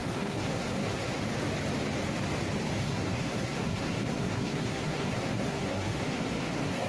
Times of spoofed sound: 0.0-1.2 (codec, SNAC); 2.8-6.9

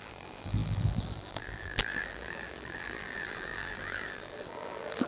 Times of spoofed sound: 0.0-5.1 (vocoder, BigVGAN v2)

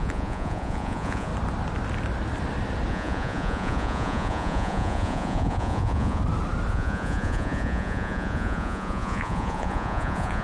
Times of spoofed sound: 0.0-1.3 (vocoder, Vocos); 2.9-6.2; 6.7-10.4

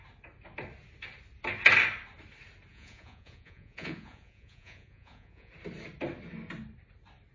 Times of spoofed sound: 2.7-5.5 (vocoder, Vocos)

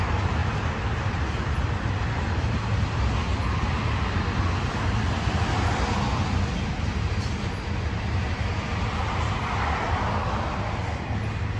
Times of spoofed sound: 0.4-1.1 (vocoder, BigVGAN v2)

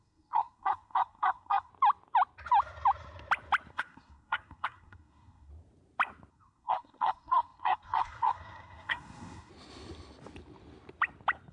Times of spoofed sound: 0.0-1.7 (codec, SNAC); 3.7-5.5; 6.3-9.5